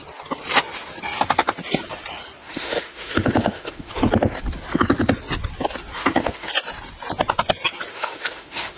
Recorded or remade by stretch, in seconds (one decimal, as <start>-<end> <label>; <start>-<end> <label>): 0.0-2.4 recorded; 2.4-3.9 remade; 3.9-6.0 recorded; 6.0-6.5 remade; 6.5-7.9 recorded; 7.9-8.8 remade